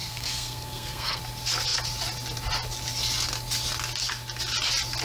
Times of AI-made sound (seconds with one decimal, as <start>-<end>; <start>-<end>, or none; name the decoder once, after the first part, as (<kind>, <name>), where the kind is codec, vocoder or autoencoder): 0.0-1.2 (codec, SNAC)

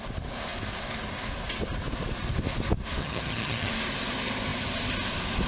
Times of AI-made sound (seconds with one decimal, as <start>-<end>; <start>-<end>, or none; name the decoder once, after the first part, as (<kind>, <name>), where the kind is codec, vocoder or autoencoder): 3.0-3.7 (vocoder, HiFi-GAN)

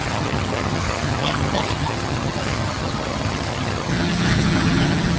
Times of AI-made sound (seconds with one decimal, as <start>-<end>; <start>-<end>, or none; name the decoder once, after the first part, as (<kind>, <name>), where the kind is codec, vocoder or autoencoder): 0.0-5.2 (vocoder, HiFi-GAN)

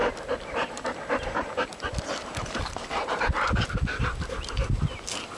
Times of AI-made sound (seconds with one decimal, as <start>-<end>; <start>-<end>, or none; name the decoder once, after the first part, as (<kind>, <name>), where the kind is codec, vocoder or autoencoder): none

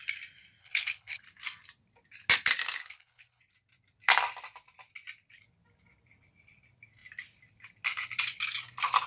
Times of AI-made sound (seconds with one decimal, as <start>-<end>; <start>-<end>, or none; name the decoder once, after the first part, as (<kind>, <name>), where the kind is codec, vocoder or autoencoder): 0.6-1.2 (codec, HILCodec); 2.8-3.4

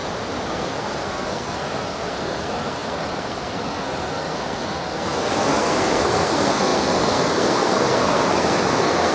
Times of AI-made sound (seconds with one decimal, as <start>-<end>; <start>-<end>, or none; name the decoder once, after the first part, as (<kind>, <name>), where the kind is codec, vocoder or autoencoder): 0.5-9.1 (codec, SNAC)